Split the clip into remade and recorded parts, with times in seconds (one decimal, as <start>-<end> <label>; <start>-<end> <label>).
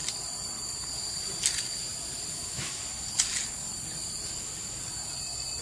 0.0-2.3 recorded; 2.3-2.8 remade; 2.8-5.6 recorded